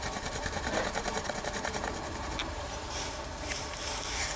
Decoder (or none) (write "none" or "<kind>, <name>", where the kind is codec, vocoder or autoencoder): vocoder, BigVGAN v2